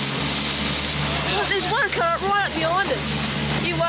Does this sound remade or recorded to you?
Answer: recorded